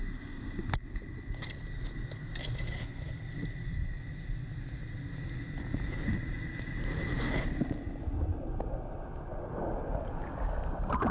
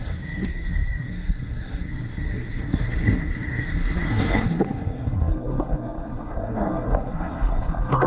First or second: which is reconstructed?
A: second